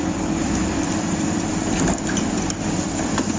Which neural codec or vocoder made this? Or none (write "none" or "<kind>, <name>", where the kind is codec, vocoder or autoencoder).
vocoder, BigVGAN v2